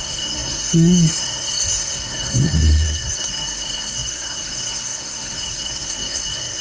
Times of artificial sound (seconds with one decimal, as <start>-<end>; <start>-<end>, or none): 0.0-6.6